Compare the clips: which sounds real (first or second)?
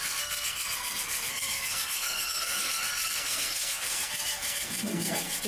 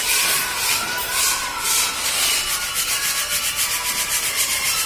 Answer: second